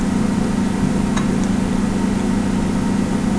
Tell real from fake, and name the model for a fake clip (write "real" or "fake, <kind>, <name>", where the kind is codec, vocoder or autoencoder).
real